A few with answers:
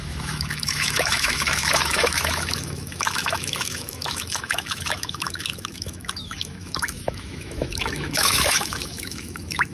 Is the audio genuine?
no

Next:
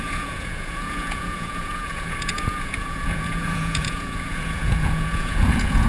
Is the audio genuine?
no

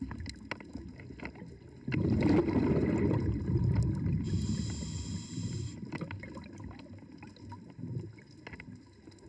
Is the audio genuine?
yes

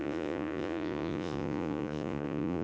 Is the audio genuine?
no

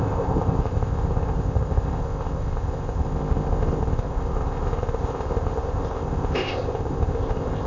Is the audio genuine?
no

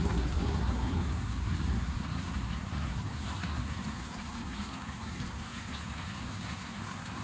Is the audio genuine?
no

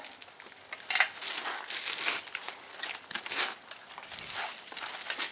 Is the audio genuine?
yes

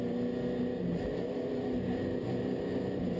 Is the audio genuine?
yes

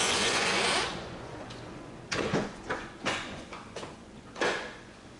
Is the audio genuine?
no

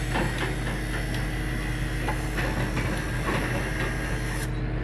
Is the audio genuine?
yes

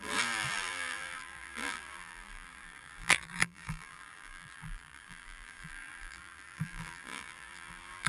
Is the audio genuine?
no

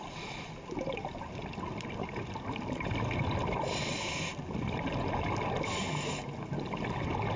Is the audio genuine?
yes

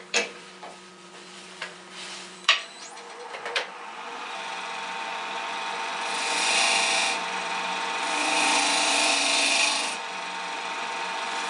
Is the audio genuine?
no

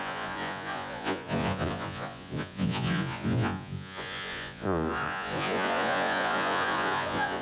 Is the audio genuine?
no